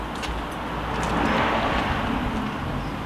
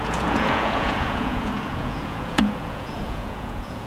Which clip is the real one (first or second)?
first